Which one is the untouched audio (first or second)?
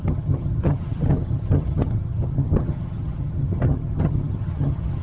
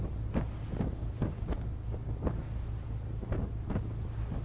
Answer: second